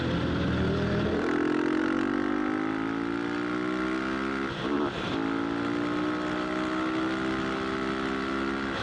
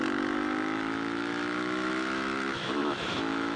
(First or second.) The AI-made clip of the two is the second